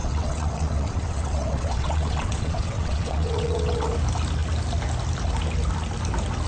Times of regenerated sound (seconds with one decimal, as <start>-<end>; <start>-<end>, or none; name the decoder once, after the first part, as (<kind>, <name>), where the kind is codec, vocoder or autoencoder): 0.0-3.9 (vocoder, WaveNeXt)